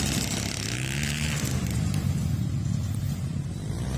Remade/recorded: recorded